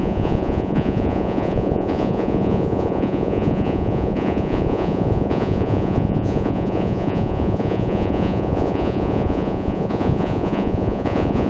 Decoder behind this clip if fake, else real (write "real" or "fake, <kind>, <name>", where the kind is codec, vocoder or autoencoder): fake, vocoder, Vocos